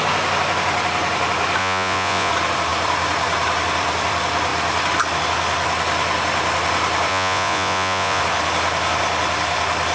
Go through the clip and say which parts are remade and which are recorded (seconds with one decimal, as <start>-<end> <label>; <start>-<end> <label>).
0.0-1.6 recorded; 1.6-2.3 remade; 2.3-7.1 recorded; 7.1-8.2 remade; 8.2-9.9 recorded